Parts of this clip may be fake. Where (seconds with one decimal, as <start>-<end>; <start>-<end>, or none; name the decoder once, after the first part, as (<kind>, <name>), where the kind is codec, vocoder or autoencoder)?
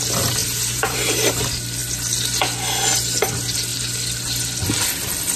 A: 0.4-1.4 (vocoder, BigVGAN v2)